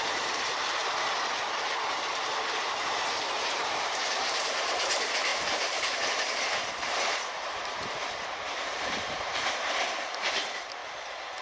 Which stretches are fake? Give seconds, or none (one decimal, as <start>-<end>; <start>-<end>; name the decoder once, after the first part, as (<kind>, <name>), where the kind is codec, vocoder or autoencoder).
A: 0.0-0.8 (vocoder, BigVGAN v2); 3.5-10.8